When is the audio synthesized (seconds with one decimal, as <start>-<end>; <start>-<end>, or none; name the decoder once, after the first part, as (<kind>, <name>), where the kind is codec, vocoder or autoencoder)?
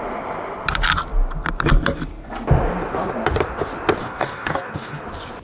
4.0-5.0 (codec, DAC)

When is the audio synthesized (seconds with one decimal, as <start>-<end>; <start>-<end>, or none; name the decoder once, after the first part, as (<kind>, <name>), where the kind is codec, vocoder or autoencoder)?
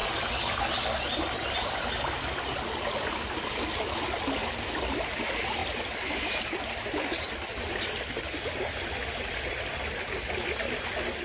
none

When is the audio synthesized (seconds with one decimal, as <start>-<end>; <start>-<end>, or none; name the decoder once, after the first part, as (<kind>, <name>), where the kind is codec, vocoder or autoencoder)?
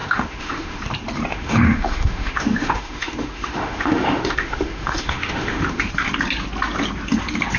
0.0-0.8 (autoencoder, DAC-VAE); 1.3-5.9